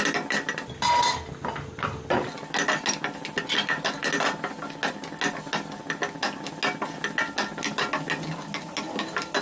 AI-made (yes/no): no